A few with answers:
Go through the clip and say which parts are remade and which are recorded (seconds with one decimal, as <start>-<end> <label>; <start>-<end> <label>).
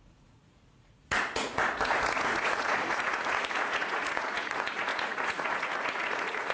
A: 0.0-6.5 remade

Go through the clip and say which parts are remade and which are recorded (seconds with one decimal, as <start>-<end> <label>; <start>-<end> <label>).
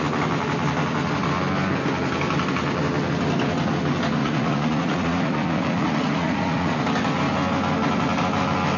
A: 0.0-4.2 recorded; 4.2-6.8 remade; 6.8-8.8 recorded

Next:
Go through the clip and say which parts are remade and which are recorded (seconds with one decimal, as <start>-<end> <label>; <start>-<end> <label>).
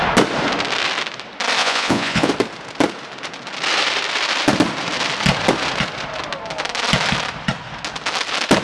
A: 0.0-1.6 recorded; 1.6-2.3 remade; 2.3-8.6 recorded